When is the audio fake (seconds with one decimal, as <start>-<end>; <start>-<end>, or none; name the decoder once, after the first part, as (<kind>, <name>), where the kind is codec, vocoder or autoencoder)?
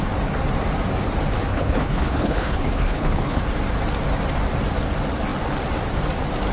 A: 1.5-3.4 (codec, HILCodec)